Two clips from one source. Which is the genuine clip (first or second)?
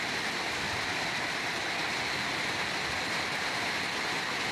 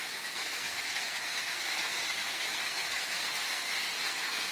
first